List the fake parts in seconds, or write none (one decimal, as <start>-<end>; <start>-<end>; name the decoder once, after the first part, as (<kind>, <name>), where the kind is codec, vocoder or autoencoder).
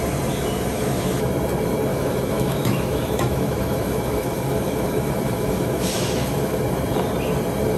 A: 0.7-1.3 (autoencoder, DAC-VAE); 1.9-6.6